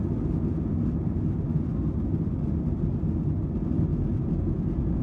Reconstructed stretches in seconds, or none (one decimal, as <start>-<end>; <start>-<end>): 3.9-5.0